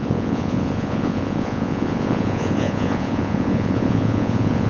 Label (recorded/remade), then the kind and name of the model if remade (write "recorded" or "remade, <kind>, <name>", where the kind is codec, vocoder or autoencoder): remade, vocoder, Vocos